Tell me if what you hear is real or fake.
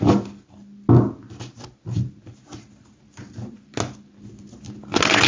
real